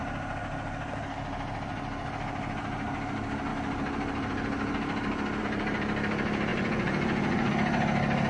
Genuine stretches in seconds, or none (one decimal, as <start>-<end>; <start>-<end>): 0.0-6.5; 7.5-8.3

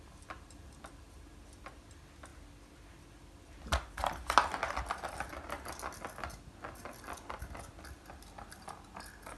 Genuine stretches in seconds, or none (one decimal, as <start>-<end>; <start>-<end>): 0.0-9.4

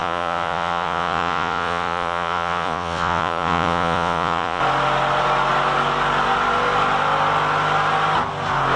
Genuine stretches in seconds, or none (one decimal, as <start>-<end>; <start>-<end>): 4.6-8.8